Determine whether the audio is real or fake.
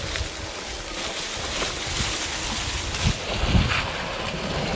real